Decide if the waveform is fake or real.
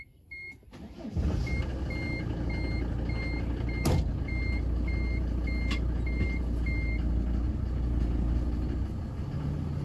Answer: real